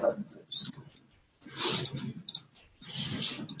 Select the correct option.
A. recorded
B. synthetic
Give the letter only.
A